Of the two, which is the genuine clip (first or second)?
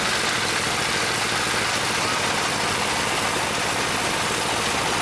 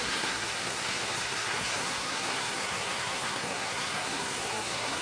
first